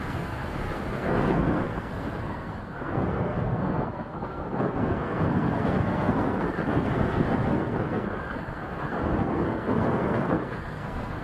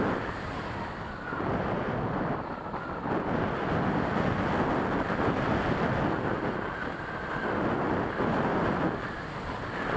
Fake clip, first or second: first